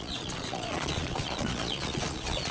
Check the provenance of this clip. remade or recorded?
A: remade